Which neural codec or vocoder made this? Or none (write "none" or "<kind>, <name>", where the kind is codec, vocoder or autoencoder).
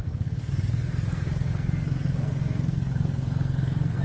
codec, SNAC